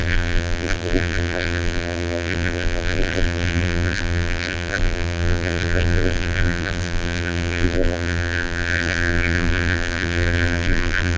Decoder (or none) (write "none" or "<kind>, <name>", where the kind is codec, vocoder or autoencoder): vocoder, BigVGAN v2